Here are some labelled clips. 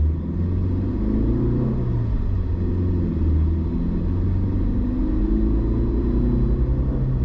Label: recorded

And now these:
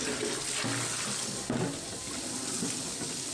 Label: recorded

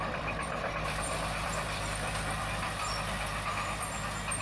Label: remade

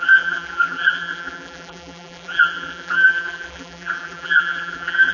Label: remade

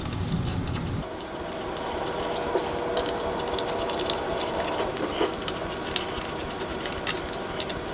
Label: recorded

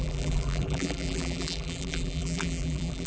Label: remade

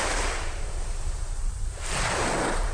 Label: remade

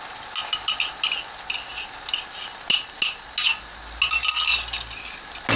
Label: recorded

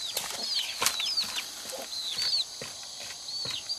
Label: recorded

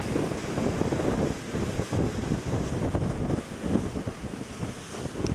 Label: recorded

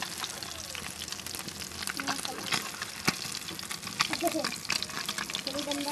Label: recorded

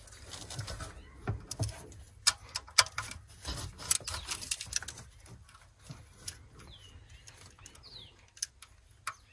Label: recorded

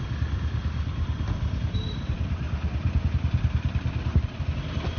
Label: remade